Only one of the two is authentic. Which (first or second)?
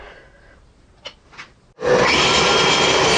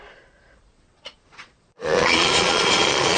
first